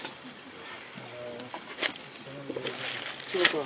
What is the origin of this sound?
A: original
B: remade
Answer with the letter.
A